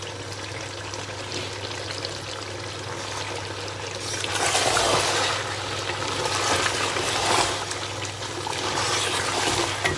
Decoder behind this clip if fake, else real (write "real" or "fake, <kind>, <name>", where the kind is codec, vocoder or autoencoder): real